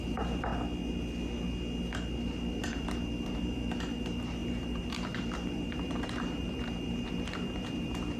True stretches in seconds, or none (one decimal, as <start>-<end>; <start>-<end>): 0.5-2.6